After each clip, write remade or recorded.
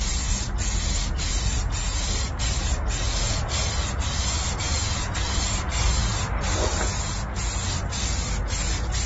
recorded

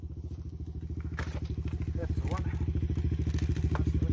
recorded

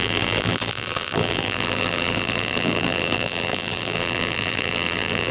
remade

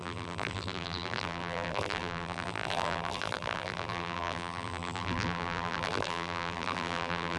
remade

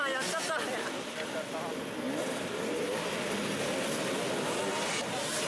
remade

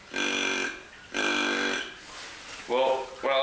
recorded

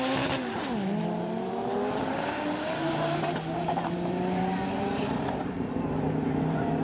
remade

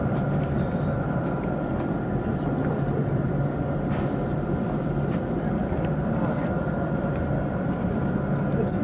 remade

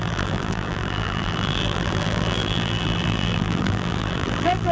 remade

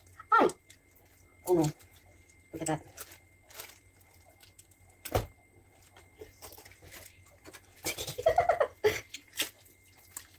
recorded